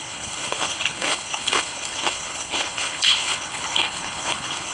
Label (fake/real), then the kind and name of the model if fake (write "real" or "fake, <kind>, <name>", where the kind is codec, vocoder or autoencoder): fake, codec, HILCodec